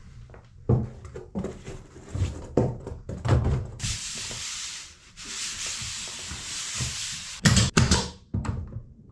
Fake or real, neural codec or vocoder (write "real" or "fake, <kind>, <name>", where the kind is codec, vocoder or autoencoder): fake, vocoder, BigVGAN v2